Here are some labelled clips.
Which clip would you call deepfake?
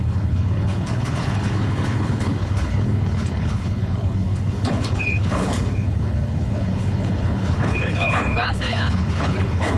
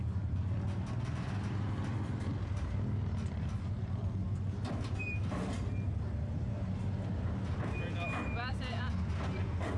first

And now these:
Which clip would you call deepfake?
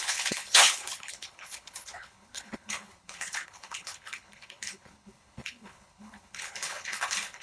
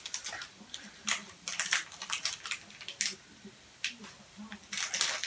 first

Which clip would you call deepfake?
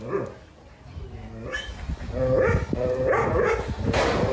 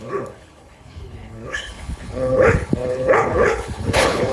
second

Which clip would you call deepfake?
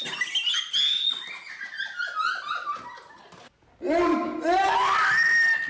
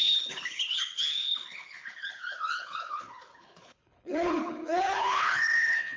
second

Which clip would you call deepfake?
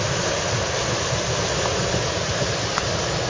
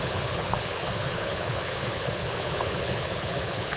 second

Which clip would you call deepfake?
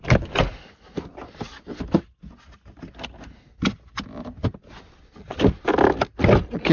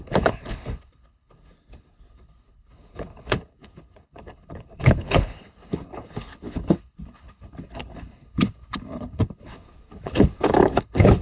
second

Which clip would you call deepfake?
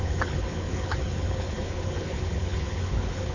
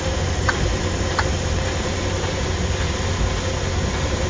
first